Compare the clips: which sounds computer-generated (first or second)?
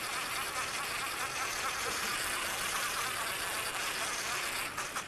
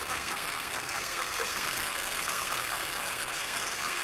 second